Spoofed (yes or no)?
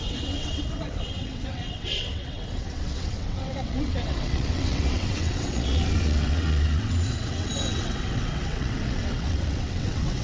yes